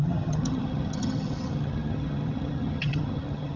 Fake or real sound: fake